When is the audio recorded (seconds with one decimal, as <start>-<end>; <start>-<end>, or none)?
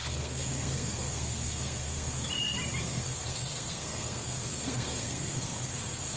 2.2-2.8